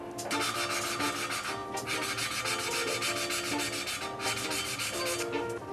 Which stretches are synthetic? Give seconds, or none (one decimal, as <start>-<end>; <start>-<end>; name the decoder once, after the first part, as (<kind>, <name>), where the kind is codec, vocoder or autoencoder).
none